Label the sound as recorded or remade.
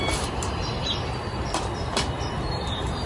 remade